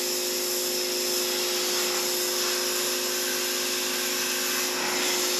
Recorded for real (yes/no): yes